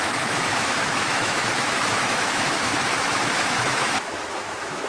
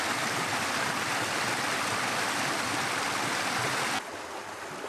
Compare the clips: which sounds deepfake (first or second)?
first